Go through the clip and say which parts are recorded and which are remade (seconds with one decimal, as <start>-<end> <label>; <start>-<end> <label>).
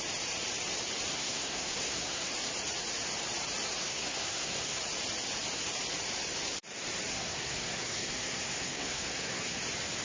0.0-1.1 recorded; 1.1-2.3 remade; 2.3-3.8 recorded; 3.8-4.8 remade; 4.8-7.1 recorded; 7.1-9.6 remade; 9.6-10.0 recorded